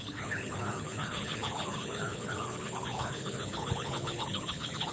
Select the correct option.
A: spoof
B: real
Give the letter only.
A